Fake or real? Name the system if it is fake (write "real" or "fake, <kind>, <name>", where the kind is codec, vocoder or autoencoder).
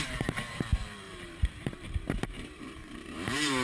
fake, vocoder, BigVGAN v2